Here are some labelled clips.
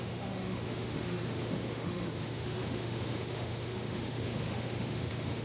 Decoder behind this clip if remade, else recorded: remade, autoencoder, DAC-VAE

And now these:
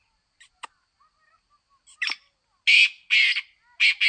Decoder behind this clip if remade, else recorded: recorded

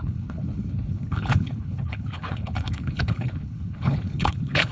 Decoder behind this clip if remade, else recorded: remade, codec, HILCodec